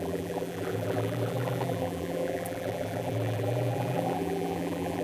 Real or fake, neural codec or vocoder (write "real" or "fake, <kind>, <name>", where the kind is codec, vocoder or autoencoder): fake, vocoder, BigVGAN v2